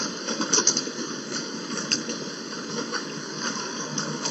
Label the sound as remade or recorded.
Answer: remade